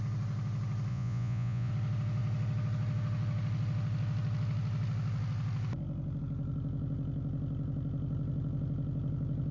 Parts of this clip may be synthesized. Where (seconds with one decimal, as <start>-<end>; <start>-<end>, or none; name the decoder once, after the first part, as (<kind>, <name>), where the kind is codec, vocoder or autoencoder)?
0.9-1.7 (vocoder, Vocos)